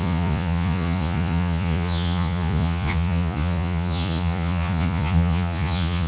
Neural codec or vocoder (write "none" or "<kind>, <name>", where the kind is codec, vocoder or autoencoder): vocoder, Vocos